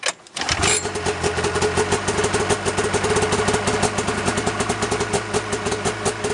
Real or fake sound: real